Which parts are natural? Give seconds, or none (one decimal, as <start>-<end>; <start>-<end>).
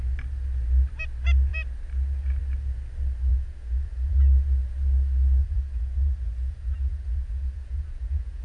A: 0.0-3.3; 4.2-5.4